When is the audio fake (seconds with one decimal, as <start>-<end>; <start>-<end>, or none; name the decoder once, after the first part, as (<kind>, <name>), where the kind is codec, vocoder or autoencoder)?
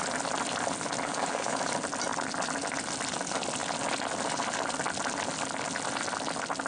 1.1-1.7 (codec, DAC)